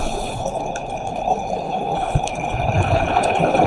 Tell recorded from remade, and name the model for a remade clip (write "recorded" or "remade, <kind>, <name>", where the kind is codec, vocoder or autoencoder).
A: remade, codec, HILCodec